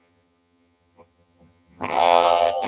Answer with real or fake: fake